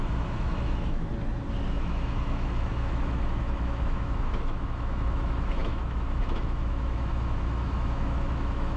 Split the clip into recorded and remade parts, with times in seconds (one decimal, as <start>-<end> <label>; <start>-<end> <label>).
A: 0.0-1.1 remade; 1.1-1.7 recorded; 1.7-8.8 remade